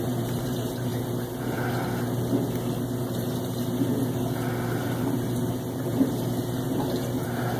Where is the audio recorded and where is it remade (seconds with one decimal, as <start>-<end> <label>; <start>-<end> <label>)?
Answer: 0.0-0.9 remade; 0.9-5.5 recorded; 5.5-7.6 remade